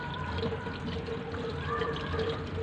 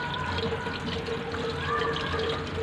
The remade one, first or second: first